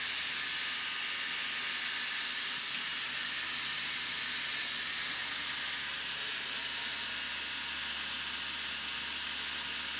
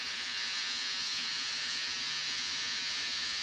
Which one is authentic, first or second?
first